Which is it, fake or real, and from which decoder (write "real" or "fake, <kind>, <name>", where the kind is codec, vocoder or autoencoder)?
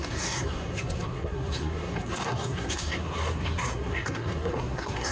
fake, codec, SNAC